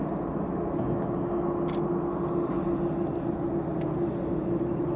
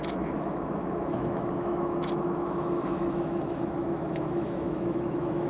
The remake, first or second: second